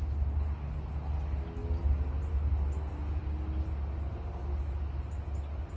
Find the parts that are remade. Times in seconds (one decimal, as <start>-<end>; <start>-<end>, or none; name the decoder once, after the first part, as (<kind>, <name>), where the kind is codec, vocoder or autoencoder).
none